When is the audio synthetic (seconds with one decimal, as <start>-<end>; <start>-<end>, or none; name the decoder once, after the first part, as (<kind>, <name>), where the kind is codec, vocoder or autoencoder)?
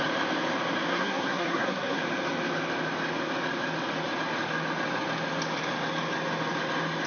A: 0.9-2.0 (codec, SNAC)